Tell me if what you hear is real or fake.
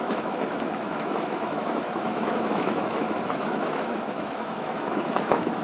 fake